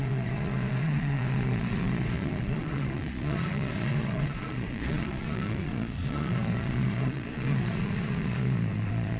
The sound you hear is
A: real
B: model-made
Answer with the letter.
B